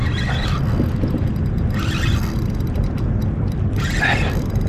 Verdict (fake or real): real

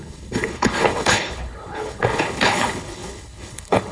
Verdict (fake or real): fake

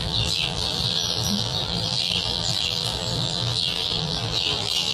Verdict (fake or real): fake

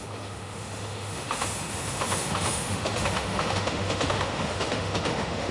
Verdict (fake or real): fake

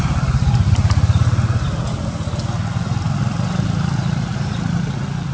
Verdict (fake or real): real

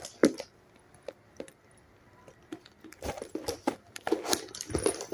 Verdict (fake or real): fake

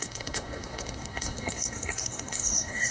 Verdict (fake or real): fake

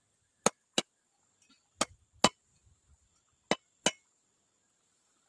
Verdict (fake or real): real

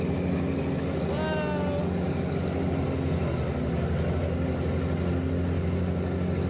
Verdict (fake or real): real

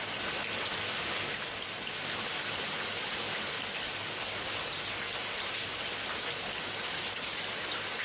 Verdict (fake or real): real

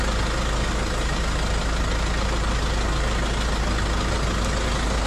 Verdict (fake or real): real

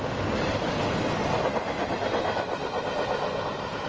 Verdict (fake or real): real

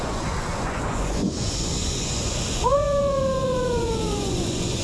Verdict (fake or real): fake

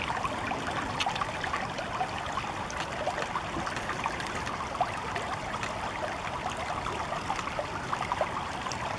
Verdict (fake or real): real